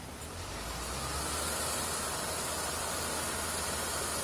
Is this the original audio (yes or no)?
yes